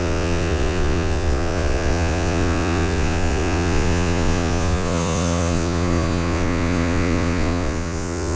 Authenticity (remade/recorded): remade